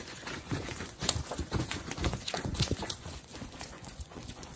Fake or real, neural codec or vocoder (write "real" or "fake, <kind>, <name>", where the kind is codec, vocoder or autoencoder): fake, vocoder, Vocos